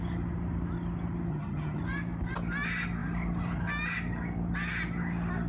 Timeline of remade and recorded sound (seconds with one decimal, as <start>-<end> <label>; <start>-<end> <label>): 0.0-1.3 recorded; 1.3-1.8 remade; 1.8-5.5 recorded